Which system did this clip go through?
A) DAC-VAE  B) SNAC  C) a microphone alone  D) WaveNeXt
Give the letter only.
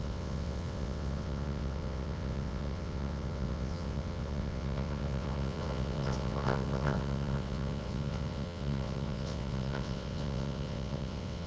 D